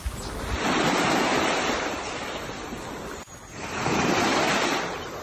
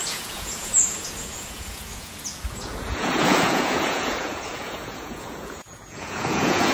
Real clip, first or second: first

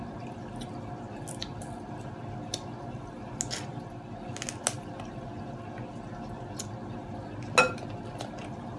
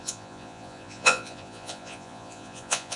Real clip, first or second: first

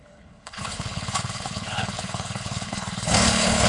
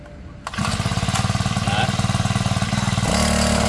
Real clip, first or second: second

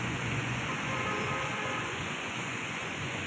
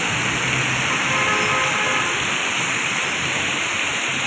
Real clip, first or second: second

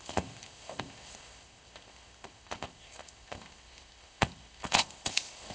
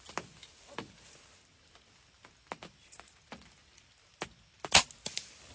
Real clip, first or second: second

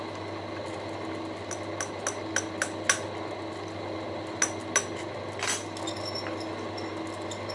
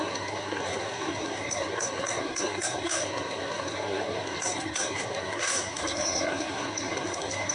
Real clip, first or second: first